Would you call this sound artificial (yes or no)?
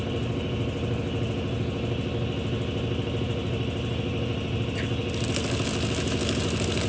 no